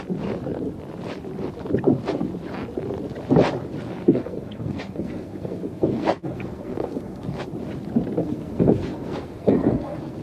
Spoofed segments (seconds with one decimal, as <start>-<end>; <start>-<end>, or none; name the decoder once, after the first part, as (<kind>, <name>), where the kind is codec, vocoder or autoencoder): 3.9-7.4 (codec, SNAC); 8.2-10.2